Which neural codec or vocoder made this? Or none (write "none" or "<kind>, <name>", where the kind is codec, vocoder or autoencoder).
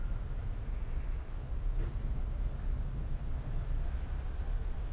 none